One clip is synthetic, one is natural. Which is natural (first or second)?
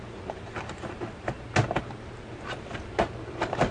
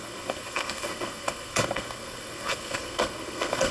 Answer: first